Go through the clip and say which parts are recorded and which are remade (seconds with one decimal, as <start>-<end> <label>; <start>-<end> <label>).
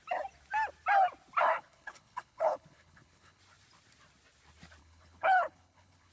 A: 0.0-1.5 recorded; 1.5-3.4 remade; 3.4-4.8 recorded; 4.8-6.1 remade